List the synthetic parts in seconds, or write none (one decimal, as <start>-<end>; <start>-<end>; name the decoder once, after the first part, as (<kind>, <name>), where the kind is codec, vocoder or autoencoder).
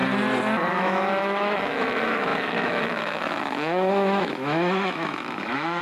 0.7-5.8 (autoencoder, DAC-VAE)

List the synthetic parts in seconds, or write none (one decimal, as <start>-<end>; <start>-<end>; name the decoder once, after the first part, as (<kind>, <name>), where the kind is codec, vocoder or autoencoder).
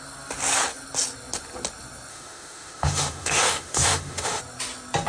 2.1-4.4 (autoencoder, DAC-VAE)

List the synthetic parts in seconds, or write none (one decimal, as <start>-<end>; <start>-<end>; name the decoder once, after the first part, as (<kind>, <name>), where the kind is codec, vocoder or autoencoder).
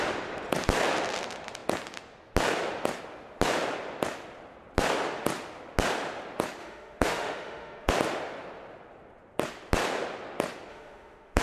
6.6-7.9 (autoencoder, DAC-VAE); 10.7-11.4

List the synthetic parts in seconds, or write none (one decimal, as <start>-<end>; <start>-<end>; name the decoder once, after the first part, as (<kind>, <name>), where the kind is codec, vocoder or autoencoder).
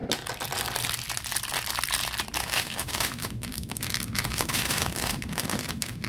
2.4-6.1 (autoencoder, DAC-VAE)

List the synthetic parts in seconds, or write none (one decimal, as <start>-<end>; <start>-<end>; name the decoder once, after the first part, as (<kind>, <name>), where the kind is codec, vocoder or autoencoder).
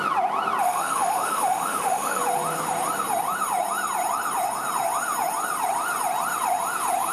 0.6-2.2 (autoencoder, DAC-VAE)